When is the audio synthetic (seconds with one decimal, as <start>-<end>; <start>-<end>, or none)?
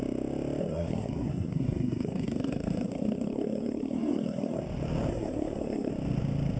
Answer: 0.6-4.6; 5.1-5.9